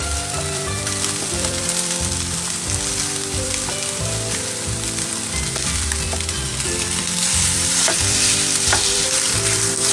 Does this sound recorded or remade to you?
remade